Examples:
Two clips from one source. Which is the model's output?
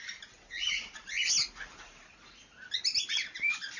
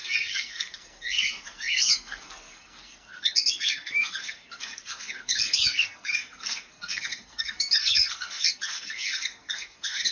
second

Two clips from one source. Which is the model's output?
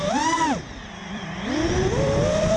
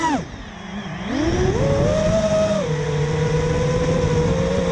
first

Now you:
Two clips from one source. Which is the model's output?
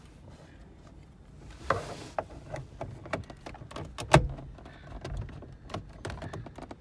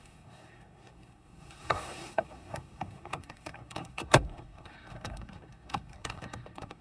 second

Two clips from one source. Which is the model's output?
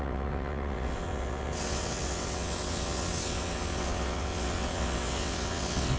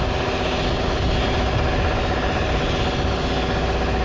first